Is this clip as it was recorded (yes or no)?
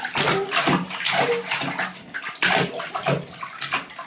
yes